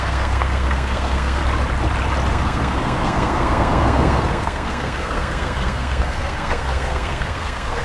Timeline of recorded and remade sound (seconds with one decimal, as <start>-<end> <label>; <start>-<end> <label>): 0.0-1.4 remade; 1.4-2.3 recorded; 2.3-7.8 remade